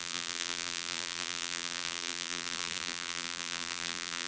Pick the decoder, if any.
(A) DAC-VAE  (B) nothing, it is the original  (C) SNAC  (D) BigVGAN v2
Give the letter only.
D